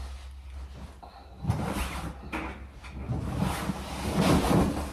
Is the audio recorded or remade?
recorded